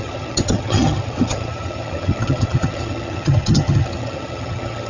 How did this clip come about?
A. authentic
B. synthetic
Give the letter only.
B